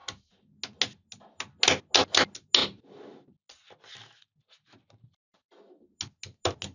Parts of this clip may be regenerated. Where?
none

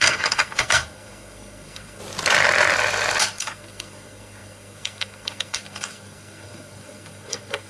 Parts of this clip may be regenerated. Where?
0.0-2.0 (codec, SNAC); 3.2-7.7

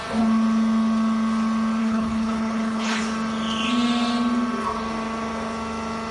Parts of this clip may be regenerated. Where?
1.8-3.0 (codec, HILCodec)

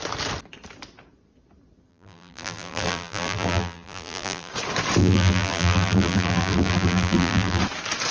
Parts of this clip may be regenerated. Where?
1.9-4.5 (vocoder, BigVGAN v2); 5.0-7.6

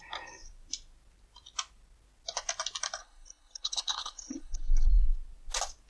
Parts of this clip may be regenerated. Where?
3.0-4.9 (codec, HILCodec)

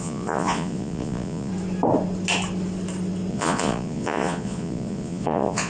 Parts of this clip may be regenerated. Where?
0.0-1.5 (vocoder, Vocos); 3.3-5.7

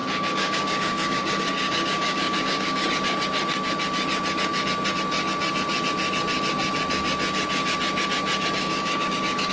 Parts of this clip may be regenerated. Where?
0.0-2.9 (codec, DAC); 8.6-9.5

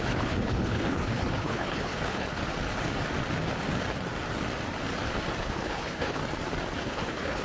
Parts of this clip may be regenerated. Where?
0.0-2.4 (codec, HILCodec); 5.4-6.2; 6.8-7.4